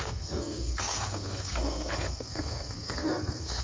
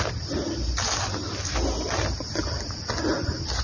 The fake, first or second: first